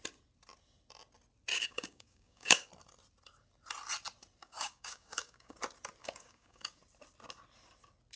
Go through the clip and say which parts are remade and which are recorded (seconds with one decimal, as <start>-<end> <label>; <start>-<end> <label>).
0.0-1.5 recorded; 1.5-2.7 remade; 2.7-4.4 recorded; 4.4-5.6 remade; 5.6-6.0 recorded; 6.0-6.8 remade; 6.8-8.2 recorded